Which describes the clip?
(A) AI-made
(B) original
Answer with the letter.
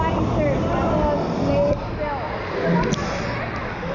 B